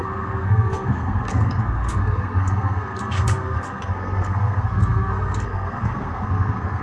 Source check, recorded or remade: remade